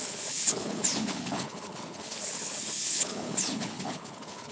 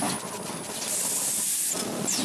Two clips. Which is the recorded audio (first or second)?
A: second